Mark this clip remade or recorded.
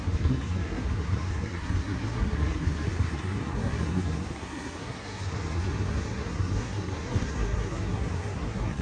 remade